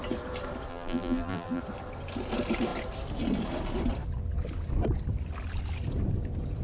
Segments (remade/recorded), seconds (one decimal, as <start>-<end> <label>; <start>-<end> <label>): 0.0-0.7 recorded; 0.7-1.6 remade; 1.6-6.6 recorded